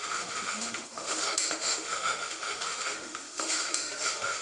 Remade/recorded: remade